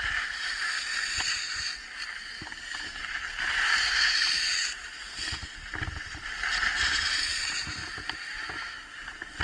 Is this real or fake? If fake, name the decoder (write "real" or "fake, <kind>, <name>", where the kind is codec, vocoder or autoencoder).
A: real